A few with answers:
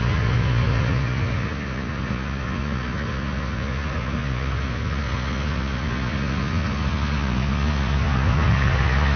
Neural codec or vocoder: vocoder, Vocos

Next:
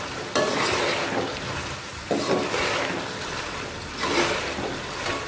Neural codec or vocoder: none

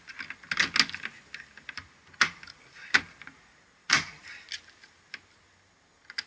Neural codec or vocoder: none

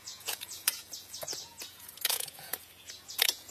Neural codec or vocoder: vocoder, Vocos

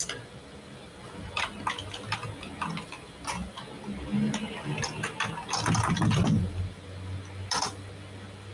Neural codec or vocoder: none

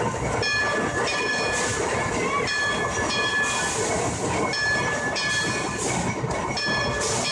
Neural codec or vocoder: none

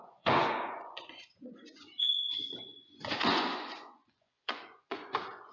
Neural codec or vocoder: vocoder, Vocos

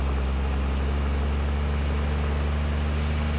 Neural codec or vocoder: none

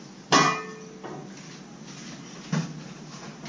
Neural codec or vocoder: none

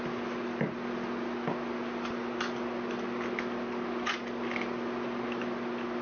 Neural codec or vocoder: none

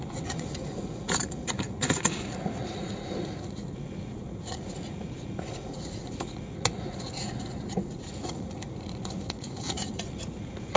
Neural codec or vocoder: vocoder, Vocos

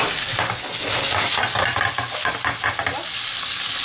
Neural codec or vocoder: none